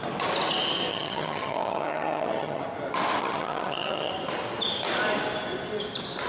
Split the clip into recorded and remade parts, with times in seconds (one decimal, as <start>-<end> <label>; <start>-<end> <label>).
0.0-0.9 recorded; 0.9-2.6 remade; 2.6-3.2 recorded; 3.2-4.1 remade; 4.1-6.3 recorded